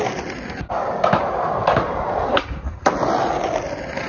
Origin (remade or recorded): recorded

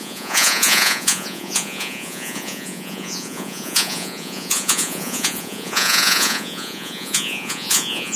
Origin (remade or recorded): remade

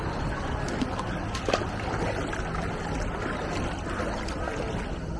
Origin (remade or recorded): recorded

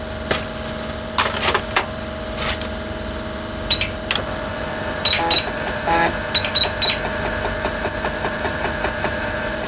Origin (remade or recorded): recorded